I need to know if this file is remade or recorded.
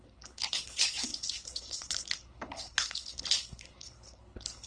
remade